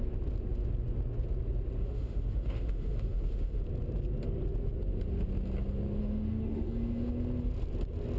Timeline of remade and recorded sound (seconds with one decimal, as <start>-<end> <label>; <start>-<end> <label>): 0.0-1.8 recorded; 1.8-3.6 remade; 3.6-6.0 recorded; 6.0-7.1 remade; 7.1-8.2 recorded